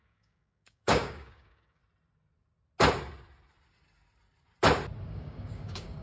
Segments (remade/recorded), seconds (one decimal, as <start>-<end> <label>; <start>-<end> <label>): 0.0-1.8 remade; 1.8-5.1 recorded; 5.1-6.0 remade